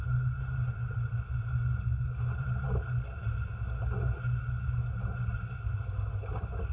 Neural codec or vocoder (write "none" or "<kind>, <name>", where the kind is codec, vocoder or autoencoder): none